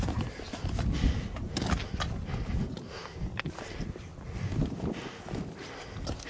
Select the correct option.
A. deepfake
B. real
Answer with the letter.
B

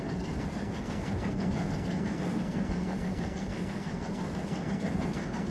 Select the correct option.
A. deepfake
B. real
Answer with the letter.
A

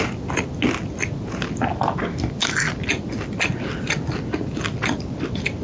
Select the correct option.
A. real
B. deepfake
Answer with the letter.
A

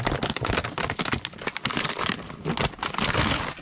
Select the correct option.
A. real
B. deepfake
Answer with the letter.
A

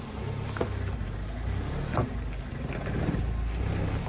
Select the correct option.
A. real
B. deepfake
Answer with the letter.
A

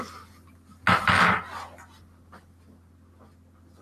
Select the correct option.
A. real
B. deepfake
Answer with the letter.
A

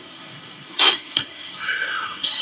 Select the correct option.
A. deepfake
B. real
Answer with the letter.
A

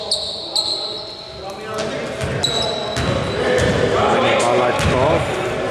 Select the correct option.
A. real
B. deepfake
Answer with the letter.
A